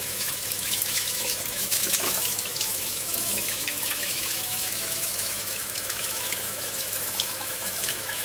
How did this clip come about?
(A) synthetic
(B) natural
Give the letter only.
A